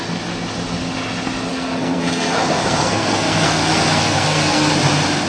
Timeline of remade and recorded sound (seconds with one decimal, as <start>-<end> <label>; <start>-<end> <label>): 0.0-1.5 recorded; 1.5-4.7 remade; 4.7-5.3 recorded